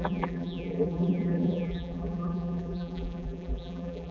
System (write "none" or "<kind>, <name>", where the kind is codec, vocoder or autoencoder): vocoder, BigVGAN v2